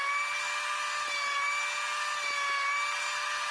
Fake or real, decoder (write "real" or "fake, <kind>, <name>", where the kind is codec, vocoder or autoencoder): real